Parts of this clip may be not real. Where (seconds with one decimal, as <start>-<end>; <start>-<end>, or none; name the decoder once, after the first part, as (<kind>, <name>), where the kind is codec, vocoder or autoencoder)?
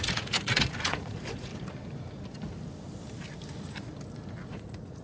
0.0-1.5 (vocoder, Vocos); 4.5-5.0